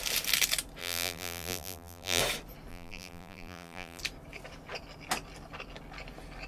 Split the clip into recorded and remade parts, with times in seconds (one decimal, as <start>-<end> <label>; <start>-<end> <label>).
0.0-0.8 recorded; 0.8-2.2 remade; 2.2-2.7 recorded; 2.7-4.0 remade; 4.0-6.5 recorded